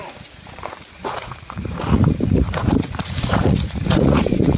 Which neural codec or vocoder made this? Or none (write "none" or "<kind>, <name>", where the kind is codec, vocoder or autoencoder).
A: vocoder, Vocos